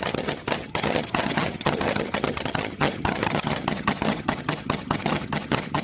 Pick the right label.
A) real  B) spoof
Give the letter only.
B